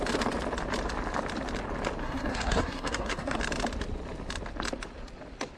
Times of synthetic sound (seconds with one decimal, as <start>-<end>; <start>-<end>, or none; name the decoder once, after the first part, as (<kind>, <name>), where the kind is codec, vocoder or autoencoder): 2.0-3.4 (codec, SNAC)